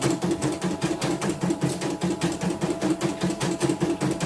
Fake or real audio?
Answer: real